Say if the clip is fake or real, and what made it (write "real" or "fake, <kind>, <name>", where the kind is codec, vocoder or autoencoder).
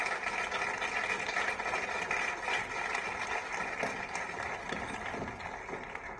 real